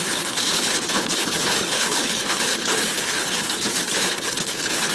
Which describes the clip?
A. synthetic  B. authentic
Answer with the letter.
A